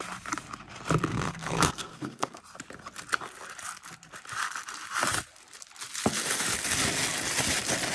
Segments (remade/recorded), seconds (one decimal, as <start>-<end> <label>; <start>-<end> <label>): 0.0-1.1 recorded; 1.1-2.4 remade; 2.4-7.9 recorded